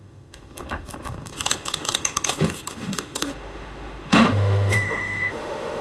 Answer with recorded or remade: remade